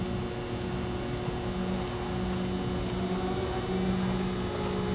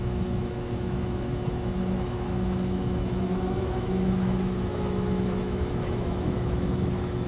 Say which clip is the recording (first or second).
first